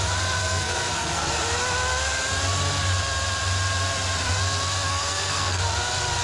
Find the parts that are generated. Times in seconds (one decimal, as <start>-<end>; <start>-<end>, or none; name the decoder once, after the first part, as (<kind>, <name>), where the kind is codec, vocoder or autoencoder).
0.4-1.3 (codec, SNAC); 4.9-5.6